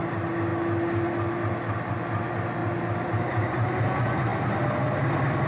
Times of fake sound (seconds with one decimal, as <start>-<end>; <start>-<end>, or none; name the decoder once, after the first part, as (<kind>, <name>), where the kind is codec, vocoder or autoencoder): none